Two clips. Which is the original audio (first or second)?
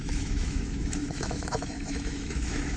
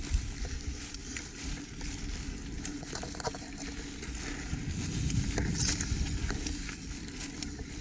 second